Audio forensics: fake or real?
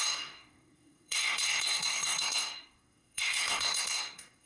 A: fake